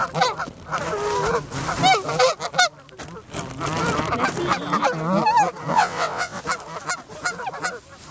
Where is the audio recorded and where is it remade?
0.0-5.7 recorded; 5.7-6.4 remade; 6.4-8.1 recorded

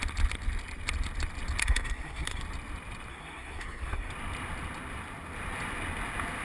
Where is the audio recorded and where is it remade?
0.0-1.6 recorded; 1.6-2.4 remade; 2.4-3.1 recorded; 3.1-4.1 remade; 4.1-6.4 recorded

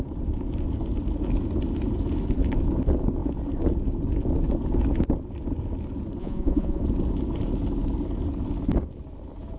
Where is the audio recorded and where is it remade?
0.0-6.2 recorded; 6.2-6.8 remade; 6.8-9.6 recorded

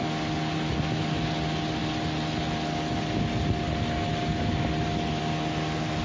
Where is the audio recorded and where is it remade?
0.0-6.0 recorded

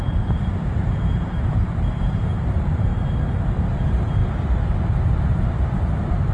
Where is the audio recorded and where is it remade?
0.0-2.9 remade; 2.9-3.8 recorded; 3.8-4.2 remade; 4.2-5.2 recorded; 5.2-6.3 remade

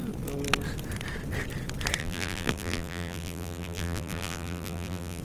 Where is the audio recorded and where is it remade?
0.0-2.0 recorded; 2.0-5.2 remade